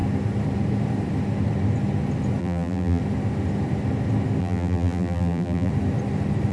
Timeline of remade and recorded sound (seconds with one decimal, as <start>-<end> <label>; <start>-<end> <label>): 0.0-2.4 recorded; 2.4-3.0 remade; 3.0-4.4 recorded; 4.4-5.7 remade; 5.7-6.5 recorded